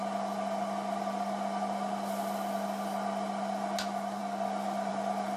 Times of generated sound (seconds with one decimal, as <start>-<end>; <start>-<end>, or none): none